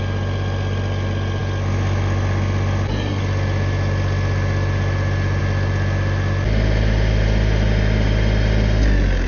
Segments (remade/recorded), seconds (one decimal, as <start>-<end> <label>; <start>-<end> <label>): 0.0-9.3 recorded